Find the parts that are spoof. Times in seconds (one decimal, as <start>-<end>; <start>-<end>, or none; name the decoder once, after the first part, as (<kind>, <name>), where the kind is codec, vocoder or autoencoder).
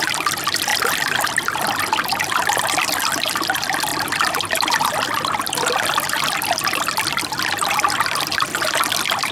none